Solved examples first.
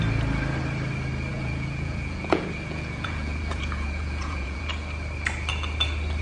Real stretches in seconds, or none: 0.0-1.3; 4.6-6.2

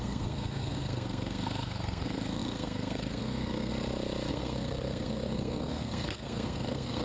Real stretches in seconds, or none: 3.7-4.3

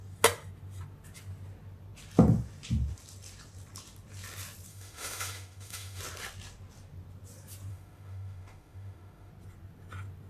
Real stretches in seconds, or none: 0.0-4.7; 6.0-7.7; 9.3-10.3

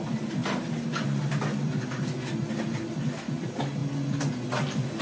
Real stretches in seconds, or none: 0.0-5.0